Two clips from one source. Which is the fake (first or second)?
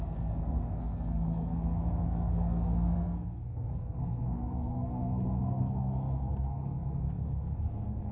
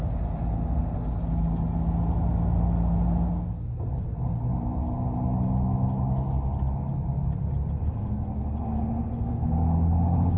first